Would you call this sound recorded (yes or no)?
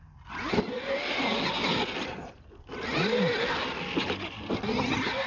yes